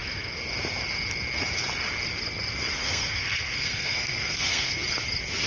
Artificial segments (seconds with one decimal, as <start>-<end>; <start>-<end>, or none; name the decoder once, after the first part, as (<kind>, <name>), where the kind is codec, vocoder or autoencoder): 2.8-4.7 (codec, SNAC)